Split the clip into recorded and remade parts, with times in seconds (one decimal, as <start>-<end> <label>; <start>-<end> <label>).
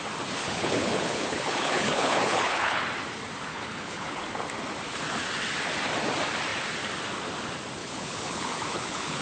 0.0-0.4 recorded; 0.4-2.8 remade; 2.8-3.5 recorded; 3.5-4.2 remade; 4.2-7.8 recorded; 7.8-9.2 remade